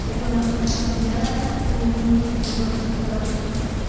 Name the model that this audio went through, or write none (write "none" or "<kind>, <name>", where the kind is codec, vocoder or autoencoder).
none